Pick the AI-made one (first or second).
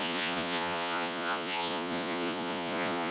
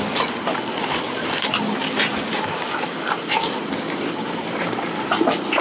first